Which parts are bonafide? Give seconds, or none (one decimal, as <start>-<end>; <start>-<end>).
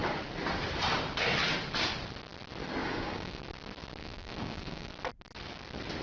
0.0-2.8; 3.4-4.0; 4.9-6.0